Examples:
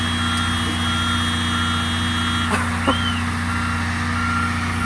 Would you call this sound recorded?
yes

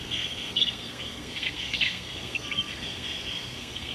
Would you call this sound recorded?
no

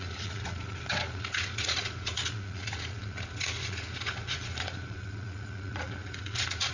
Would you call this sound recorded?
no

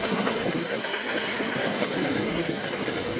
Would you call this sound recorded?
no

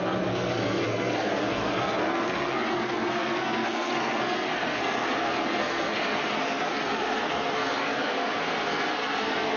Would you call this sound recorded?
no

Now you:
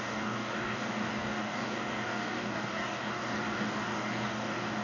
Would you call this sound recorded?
no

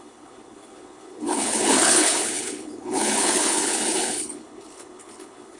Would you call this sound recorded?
no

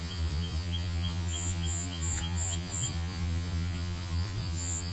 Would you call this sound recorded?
no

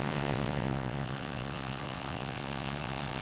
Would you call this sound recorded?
no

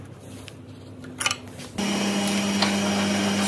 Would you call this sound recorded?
yes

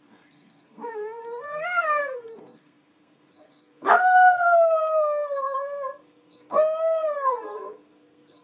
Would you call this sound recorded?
no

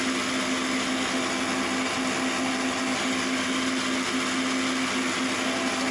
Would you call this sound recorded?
yes